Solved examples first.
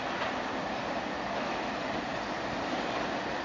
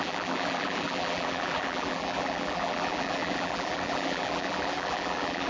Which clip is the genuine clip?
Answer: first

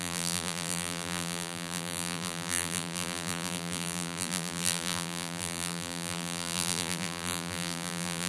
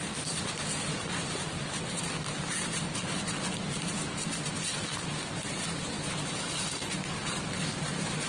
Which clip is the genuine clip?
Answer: second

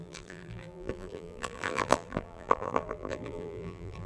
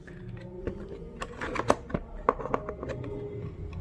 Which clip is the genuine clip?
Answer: second